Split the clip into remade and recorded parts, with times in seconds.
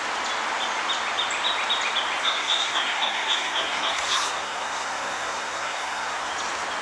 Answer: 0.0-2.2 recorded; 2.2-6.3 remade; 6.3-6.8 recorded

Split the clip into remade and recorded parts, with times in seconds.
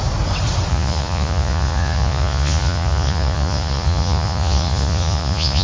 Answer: 0.0-0.7 recorded; 0.7-5.6 remade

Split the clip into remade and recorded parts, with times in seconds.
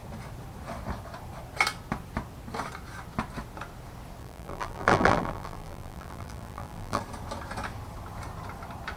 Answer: 0.0-4.2 recorded; 4.2-7.0 remade; 7.0-9.0 recorded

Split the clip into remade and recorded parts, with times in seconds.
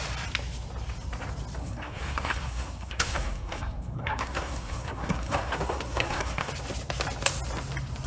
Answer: 0.0-1.6 recorded; 1.6-6.5 remade; 6.5-8.1 recorded